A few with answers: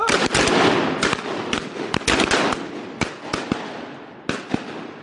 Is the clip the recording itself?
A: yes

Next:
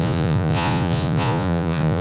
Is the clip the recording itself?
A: no